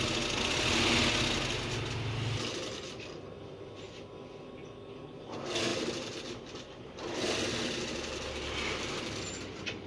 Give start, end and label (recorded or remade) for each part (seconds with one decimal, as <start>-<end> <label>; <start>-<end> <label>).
0.0-9.9 recorded